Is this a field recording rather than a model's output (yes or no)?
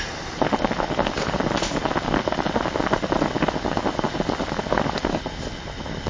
yes